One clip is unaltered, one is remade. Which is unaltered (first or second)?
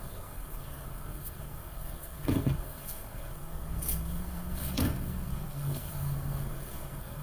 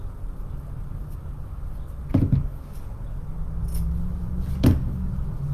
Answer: second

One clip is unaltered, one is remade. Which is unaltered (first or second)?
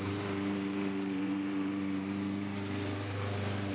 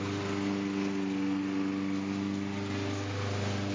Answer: second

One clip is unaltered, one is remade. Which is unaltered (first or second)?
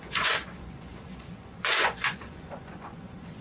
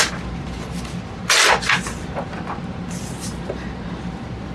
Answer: second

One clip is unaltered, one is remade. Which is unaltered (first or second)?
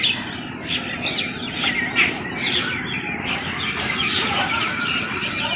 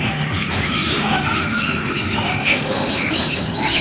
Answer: first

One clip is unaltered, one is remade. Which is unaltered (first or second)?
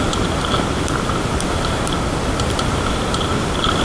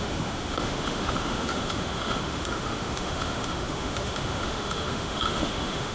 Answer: first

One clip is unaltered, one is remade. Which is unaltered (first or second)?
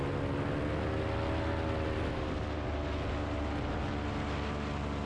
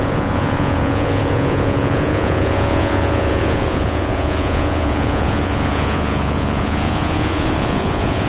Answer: first